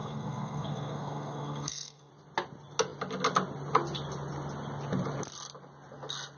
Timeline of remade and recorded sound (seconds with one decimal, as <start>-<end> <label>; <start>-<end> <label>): 0.0-2.1 remade; 2.1-6.4 recorded